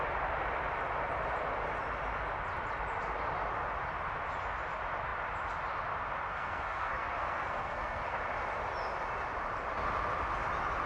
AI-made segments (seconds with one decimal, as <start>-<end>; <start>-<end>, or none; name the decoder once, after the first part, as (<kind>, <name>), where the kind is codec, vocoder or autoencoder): 6.3-8.2 (codec, SNAC)